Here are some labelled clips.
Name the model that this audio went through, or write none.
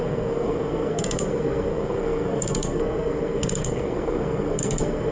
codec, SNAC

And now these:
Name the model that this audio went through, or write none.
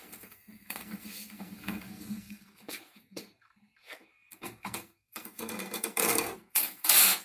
codec, SNAC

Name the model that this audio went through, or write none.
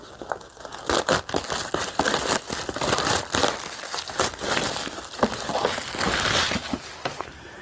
none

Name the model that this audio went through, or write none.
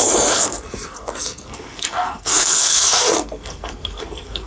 codec, SNAC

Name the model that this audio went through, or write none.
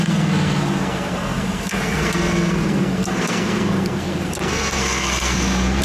codec, SNAC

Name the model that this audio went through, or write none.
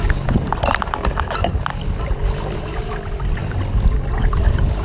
none